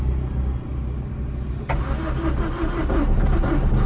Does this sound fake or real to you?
real